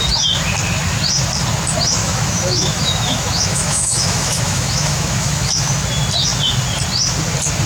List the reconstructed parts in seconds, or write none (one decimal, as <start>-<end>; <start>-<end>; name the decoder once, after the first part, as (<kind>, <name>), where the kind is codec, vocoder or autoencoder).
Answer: 2.0-5.7 (autoencoder, DAC-VAE)